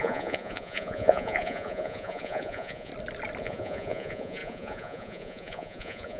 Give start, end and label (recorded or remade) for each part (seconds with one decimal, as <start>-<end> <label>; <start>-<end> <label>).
0.0-2.9 remade; 2.9-3.4 recorded; 3.4-6.2 remade